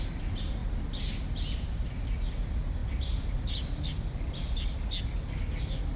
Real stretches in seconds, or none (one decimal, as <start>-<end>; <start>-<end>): 0.0-6.0